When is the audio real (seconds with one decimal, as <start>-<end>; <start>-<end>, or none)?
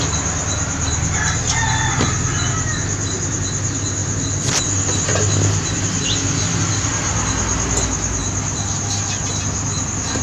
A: 0.0-10.2